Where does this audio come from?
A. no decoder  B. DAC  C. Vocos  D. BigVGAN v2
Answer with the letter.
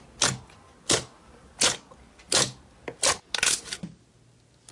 A